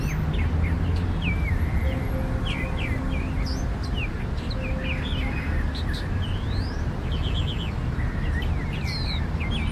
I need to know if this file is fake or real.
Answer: real